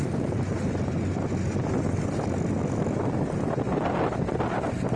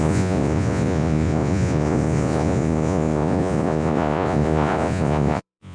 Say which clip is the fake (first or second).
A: second